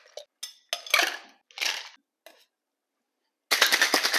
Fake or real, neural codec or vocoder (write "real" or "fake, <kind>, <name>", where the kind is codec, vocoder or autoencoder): real